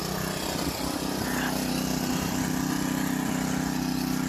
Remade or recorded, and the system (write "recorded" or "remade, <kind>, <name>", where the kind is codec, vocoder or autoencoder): recorded